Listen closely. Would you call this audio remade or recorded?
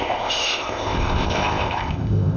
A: remade